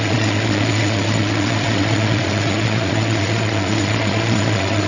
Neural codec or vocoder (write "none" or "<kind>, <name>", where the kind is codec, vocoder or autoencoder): vocoder, Vocos